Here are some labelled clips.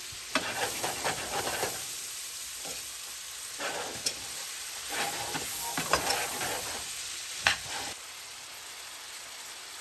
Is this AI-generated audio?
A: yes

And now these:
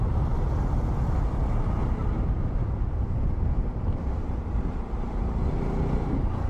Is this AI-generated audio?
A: no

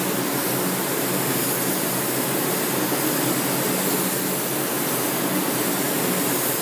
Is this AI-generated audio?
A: no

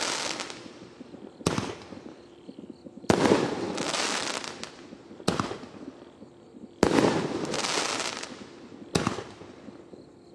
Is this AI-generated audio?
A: yes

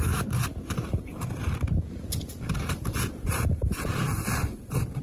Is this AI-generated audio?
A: yes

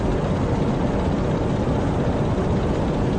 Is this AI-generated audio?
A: no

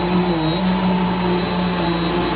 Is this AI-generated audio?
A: no